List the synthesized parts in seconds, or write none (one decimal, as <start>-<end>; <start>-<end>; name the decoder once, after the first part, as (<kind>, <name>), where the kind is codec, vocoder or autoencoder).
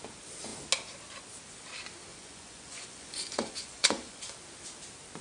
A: 2.1-4.2 (vocoder, Vocos)